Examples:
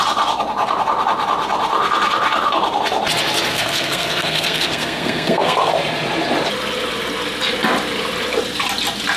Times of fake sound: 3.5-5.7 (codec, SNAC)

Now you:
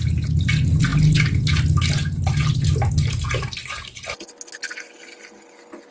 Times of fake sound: none

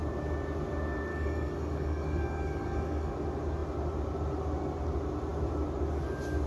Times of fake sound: 1.1-3.1 (codec, DAC)

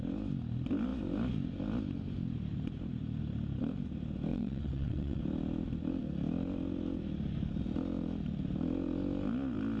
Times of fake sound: 4.3-5.2 (vocoder, WaveNeXt)

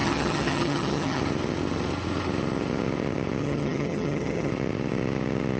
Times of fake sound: 0.0-1.2 (vocoder, HiFi-GAN); 3.4-4.5